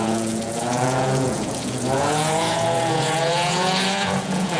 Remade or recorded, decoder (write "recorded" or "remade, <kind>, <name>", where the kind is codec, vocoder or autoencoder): remade, vocoder, Vocos